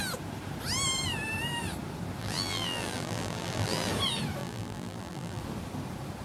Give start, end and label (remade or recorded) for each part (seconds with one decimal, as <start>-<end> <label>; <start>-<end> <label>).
0.0-2.2 recorded; 2.2-3.9 remade; 3.9-4.4 recorded; 4.4-5.4 remade; 5.4-6.2 recorded